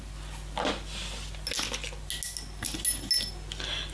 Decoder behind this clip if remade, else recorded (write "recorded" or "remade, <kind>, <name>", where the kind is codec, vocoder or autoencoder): recorded